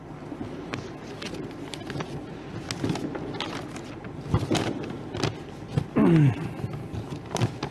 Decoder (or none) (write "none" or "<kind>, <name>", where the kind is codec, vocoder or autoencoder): none